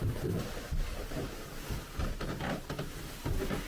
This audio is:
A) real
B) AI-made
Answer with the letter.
A